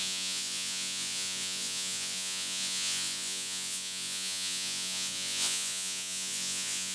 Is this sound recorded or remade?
remade